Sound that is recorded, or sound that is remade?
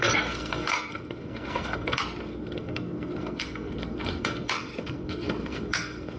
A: remade